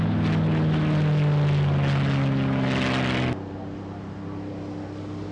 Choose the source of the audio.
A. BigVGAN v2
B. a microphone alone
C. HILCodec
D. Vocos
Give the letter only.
B